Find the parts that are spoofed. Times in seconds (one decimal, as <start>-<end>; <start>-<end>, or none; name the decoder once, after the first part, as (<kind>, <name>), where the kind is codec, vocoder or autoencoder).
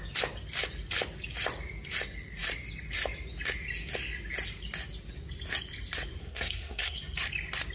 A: 6.2-7.0 (codec, SNAC)